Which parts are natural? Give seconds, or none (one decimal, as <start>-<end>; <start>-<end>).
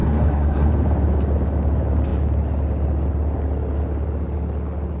0.7-5.0